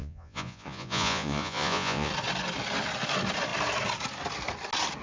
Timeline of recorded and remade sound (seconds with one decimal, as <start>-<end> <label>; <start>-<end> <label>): 0.0-2.1 remade; 2.1-5.0 recorded